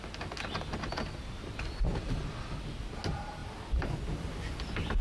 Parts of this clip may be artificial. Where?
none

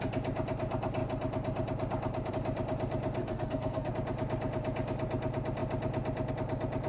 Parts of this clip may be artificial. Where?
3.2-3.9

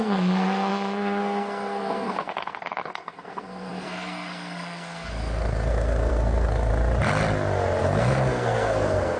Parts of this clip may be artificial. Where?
0.0-6.7; 7.8-9.2

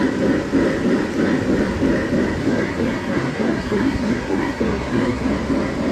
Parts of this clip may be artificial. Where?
2.4-5.3